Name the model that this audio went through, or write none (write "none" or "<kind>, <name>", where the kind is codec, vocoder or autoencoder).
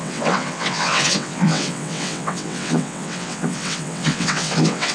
vocoder, WaveNeXt